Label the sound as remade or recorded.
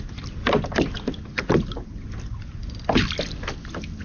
recorded